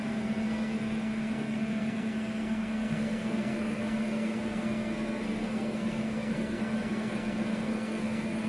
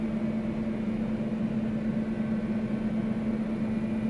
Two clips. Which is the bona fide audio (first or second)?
second